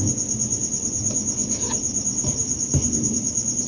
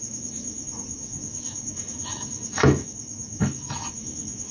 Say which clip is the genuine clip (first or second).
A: first